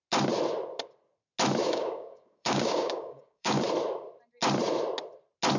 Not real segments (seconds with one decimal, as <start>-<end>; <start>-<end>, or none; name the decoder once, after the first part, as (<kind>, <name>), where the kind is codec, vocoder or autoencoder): 1.6-3.6 (codec, DAC)